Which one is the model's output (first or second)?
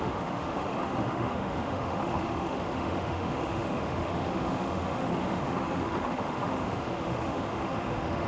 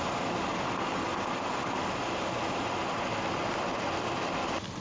first